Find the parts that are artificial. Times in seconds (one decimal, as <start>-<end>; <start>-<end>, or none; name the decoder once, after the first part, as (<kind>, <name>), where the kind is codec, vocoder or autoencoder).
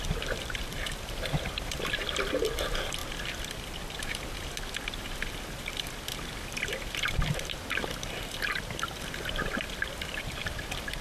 0.0-11.0 (vocoder, BigVGAN v2)